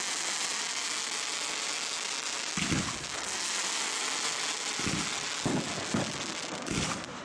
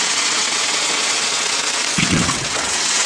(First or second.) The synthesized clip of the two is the second